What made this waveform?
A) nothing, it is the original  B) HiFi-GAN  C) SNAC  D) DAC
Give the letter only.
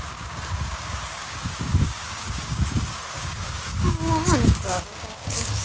D